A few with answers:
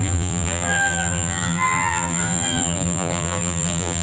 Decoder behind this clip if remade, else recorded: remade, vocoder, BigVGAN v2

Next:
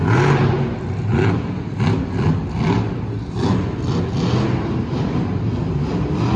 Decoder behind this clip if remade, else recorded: recorded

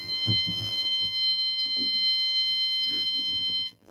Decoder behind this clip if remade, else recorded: remade, vocoder, BigVGAN v2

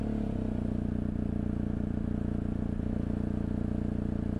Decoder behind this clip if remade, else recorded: recorded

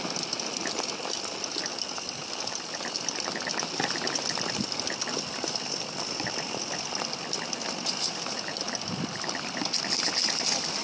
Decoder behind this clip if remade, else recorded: recorded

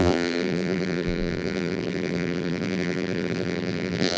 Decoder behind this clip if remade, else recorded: remade, vocoder, BigVGAN v2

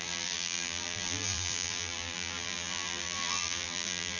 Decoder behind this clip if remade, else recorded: remade, vocoder, BigVGAN v2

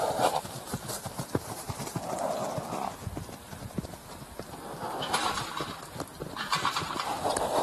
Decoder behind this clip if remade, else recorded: remade, vocoder, BigVGAN v2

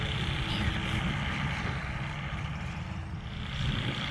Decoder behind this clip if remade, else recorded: recorded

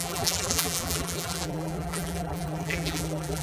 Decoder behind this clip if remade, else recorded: remade, vocoder, BigVGAN v2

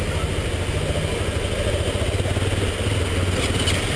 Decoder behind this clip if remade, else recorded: recorded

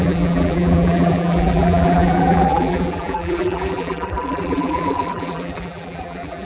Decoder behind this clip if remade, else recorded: remade, vocoder, BigVGAN v2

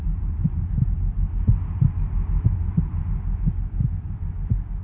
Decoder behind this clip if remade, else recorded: recorded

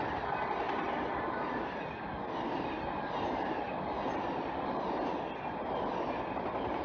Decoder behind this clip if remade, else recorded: recorded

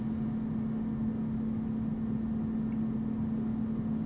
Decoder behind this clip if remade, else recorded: recorded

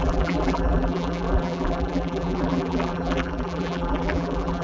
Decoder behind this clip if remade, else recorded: remade, vocoder, BigVGAN v2